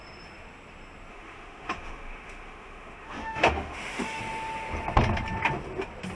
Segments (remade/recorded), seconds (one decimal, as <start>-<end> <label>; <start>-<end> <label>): 0.0-1.1 recorded; 1.1-4.2 remade; 4.2-6.1 recorded